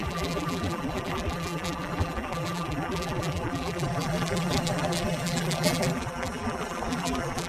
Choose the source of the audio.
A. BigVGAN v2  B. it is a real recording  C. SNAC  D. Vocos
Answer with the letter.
A